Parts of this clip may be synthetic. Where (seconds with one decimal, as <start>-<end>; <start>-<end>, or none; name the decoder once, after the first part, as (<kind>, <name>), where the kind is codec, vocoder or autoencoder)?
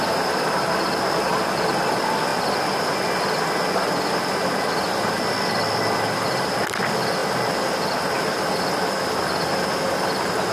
none